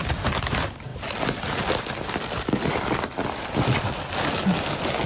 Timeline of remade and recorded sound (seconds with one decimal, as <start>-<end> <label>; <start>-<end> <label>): 0.0-5.1 recorded